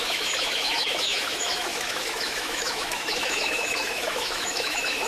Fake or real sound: fake